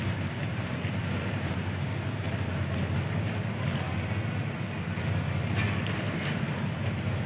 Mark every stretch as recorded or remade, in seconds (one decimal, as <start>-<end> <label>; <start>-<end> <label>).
0.0-1.9 remade; 1.9-6.3 recorded; 6.3-7.3 remade